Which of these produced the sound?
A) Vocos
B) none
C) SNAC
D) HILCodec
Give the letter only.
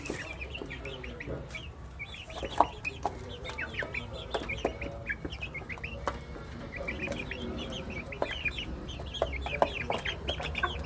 B